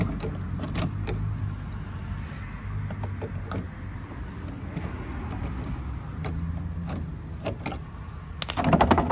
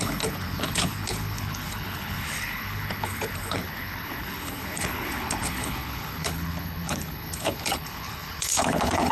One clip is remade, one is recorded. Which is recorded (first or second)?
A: first